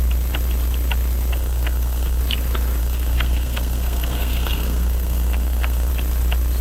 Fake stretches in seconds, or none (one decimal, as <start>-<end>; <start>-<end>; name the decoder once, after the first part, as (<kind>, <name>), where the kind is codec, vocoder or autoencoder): 1.3-2.2 (codec, SNAC); 2.8-5.9